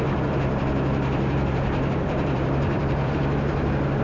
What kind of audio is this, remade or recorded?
remade